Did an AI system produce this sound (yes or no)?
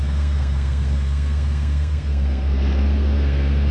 yes